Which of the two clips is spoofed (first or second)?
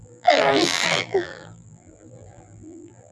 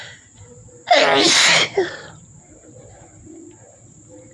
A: first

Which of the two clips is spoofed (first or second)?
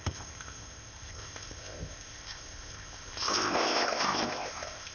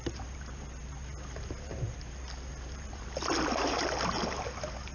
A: first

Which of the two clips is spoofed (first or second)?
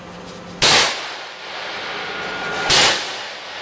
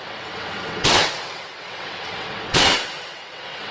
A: second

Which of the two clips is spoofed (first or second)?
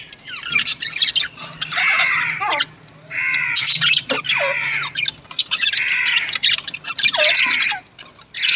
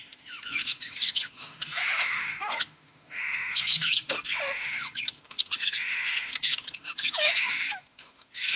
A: second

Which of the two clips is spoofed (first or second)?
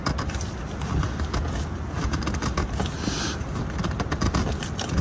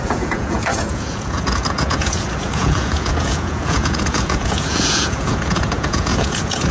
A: second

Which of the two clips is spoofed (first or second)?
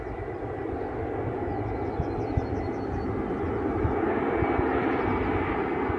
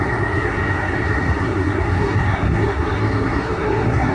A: second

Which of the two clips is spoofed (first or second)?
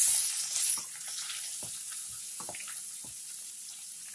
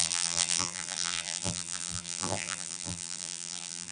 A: second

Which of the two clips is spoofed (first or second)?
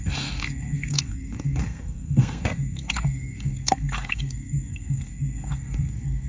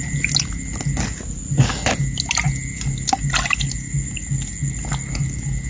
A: first